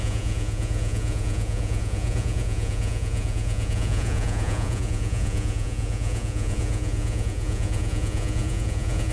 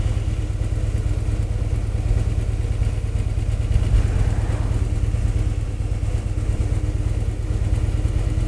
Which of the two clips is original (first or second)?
second